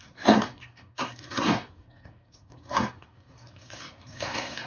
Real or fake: fake